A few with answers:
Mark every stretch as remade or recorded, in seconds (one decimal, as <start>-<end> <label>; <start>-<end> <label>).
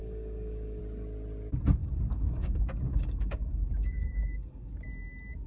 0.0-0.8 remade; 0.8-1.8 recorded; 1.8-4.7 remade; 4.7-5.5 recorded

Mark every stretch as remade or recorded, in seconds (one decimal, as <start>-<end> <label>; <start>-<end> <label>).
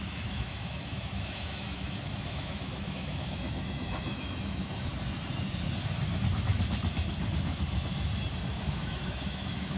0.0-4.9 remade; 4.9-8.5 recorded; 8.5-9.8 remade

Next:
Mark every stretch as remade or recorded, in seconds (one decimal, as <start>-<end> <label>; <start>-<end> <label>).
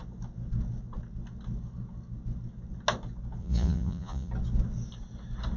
0.0-3.4 recorded; 3.4-4.3 remade; 4.3-5.6 recorded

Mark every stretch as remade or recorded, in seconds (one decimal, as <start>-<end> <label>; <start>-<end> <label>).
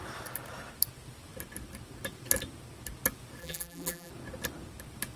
0.0-3.4 recorded; 3.4-4.1 remade; 4.1-5.2 recorded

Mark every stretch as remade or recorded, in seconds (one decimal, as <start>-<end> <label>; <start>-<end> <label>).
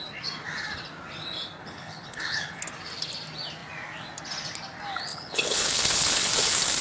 0.0-1.6 recorded; 1.6-2.6 remade; 2.6-5.1 recorded; 5.1-6.3 remade; 6.3-6.8 recorded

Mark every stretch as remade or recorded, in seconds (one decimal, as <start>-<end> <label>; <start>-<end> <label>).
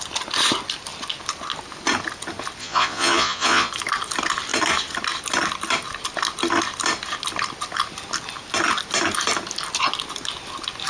0.0-2.6 recorded; 2.6-3.7 remade; 3.7-10.9 recorded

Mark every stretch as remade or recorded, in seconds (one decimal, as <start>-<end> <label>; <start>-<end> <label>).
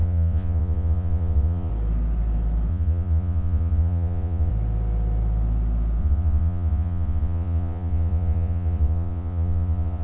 0.0-1.7 remade; 1.7-2.7 recorded; 2.7-4.5 remade; 4.5-6.0 recorded; 6.0-10.0 remade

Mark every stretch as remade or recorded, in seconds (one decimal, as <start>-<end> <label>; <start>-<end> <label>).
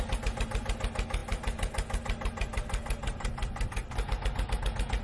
0.0-5.0 recorded